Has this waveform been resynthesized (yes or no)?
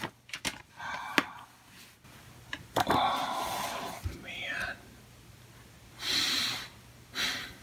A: no